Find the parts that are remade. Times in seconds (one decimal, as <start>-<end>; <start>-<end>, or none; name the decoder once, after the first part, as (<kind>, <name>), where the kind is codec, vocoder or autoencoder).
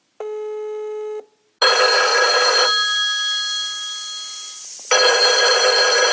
none